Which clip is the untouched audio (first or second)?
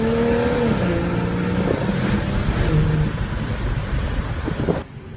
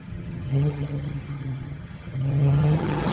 first